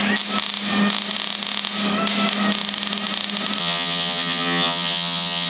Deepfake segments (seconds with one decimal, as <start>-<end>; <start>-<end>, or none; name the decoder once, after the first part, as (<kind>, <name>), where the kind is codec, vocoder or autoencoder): 3.6-5.5 (vocoder, HiFi-GAN)